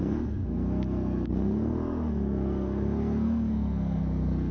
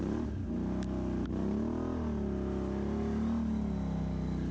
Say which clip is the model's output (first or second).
first